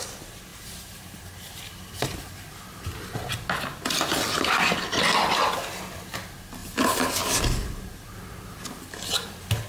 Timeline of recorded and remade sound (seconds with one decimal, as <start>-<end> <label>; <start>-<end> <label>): 0.0-9.7 recorded